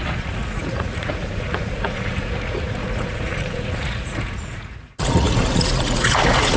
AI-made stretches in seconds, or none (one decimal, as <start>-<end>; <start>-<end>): 0.0-6.6